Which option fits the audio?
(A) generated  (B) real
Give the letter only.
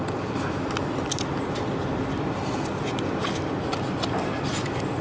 B